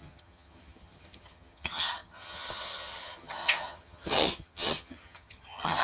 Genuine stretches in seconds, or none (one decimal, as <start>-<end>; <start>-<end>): none